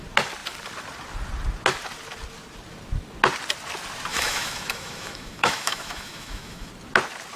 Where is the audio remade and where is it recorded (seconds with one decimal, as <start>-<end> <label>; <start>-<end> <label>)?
0.0-4.1 recorded; 4.1-6.7 remade; 6.7-7.4 recorded